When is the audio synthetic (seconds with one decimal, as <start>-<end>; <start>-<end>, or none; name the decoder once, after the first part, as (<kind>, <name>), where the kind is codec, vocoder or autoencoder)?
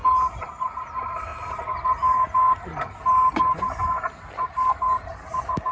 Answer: 0.8-1.3 (vocoder, BigVGAN v2); 4.7-5.7